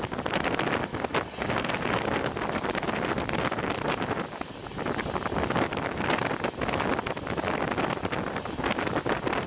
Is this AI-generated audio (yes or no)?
no